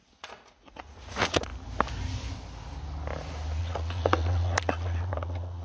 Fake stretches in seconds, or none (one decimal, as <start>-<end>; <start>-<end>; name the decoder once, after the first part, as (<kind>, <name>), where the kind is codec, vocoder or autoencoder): 0.0-1.5 (vocoder, Vocos); 3.6-5.6